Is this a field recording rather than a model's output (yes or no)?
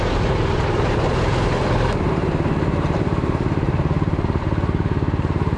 no